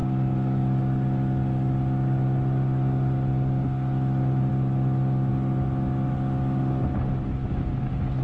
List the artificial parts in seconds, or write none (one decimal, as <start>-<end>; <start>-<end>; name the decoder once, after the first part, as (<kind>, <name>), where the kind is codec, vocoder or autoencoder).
none